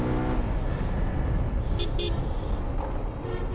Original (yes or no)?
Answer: yes